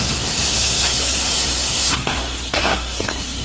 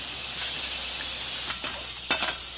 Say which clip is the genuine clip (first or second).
second